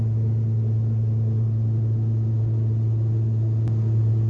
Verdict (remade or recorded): recorded